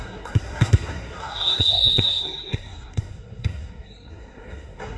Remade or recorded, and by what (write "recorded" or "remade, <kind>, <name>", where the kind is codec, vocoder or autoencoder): remade, codec, SNAC